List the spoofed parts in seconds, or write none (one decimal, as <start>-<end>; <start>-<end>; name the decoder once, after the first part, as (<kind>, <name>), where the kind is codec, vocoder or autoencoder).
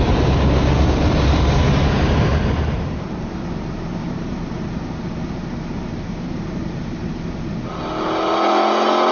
2.3-7.5 (vocoder, BigVGAN v2)